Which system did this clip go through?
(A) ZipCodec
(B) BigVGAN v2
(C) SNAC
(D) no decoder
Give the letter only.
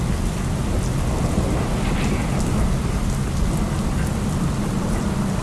D